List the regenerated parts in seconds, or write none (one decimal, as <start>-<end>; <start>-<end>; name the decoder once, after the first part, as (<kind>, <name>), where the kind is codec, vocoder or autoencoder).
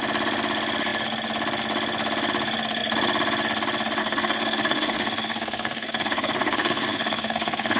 4.0-7.8 (codec, SNAC)